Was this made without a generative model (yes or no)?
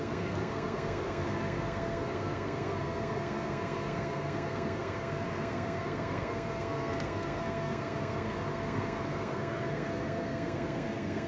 no